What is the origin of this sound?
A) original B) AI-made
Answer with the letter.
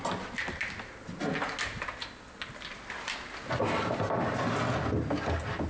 A